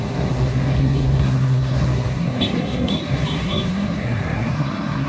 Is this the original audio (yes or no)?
no